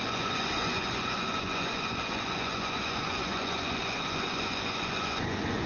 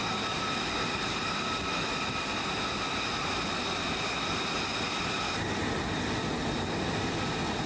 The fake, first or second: first